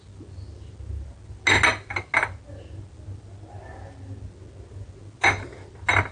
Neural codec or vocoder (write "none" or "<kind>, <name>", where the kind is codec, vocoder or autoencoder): none